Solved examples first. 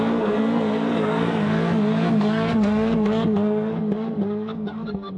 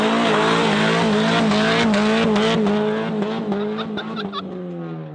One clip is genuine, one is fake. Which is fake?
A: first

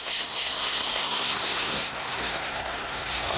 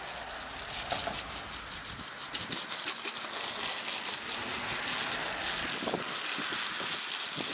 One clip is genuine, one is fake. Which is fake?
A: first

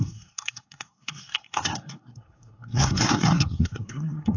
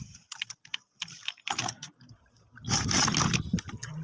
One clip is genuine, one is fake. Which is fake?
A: first